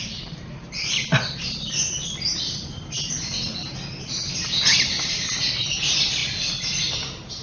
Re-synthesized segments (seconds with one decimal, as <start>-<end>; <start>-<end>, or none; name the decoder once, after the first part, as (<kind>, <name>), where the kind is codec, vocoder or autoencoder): 1.0-1.7 (vocoder, BigVGAN v2)